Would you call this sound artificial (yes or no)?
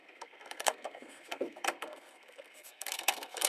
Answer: yes